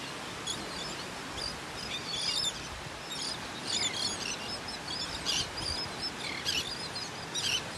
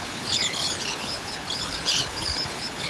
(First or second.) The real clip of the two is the first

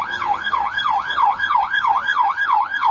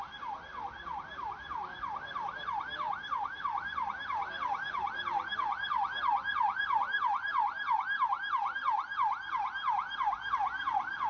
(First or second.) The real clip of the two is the second